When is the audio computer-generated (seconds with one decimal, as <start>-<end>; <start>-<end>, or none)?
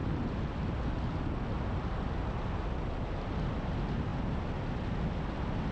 none